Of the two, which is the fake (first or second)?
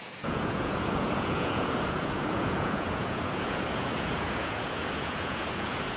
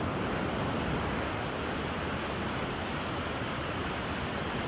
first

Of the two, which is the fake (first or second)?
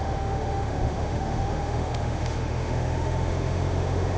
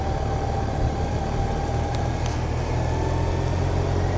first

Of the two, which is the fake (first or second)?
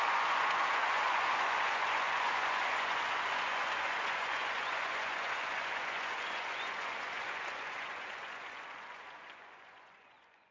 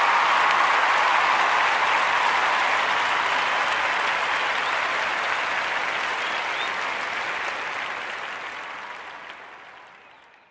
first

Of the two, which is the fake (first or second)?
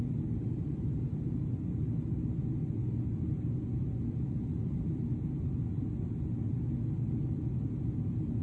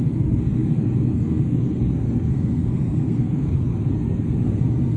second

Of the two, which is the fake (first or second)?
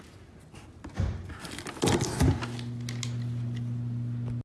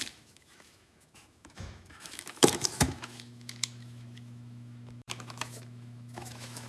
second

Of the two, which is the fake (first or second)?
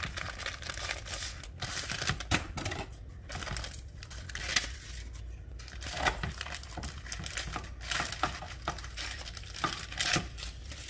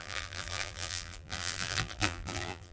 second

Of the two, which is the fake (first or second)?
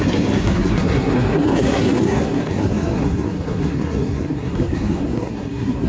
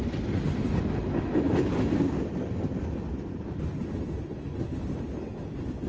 first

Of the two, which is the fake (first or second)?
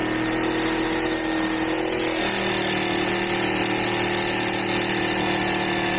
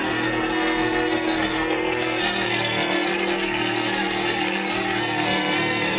second